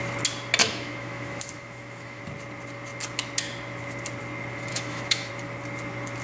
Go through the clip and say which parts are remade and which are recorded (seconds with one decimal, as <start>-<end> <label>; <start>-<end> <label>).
0.0-0.6 recorded; 0.6-2.2 remade; 2.2-4.7 recorded; 4.7-5.3 remade; 5.3-6.2 recorded